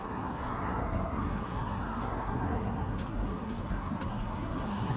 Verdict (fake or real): fake